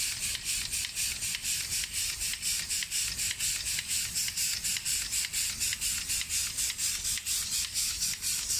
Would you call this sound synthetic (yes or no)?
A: no